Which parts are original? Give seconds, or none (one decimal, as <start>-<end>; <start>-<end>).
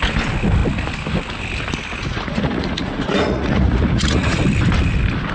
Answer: 0.0-2.0; 4.4-5.3